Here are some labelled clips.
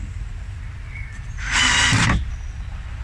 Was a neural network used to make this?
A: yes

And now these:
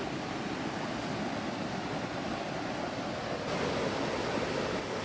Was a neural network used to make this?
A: no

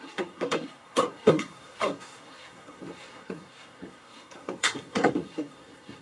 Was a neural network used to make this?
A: yes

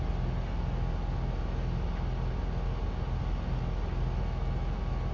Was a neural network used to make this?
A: no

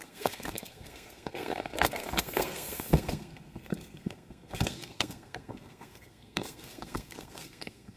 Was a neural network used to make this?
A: yes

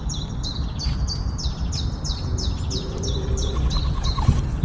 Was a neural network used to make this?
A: no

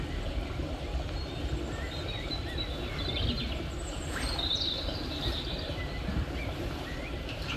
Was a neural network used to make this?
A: no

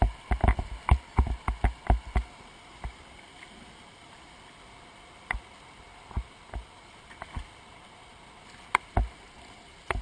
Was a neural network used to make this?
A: no